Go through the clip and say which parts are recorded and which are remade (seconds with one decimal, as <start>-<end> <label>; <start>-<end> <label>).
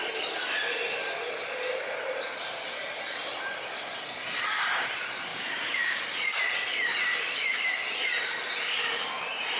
0.0-5.3 recorded; 5.3-6.0 remade; 6.0-9.6 recorded